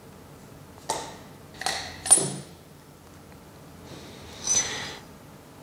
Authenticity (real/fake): real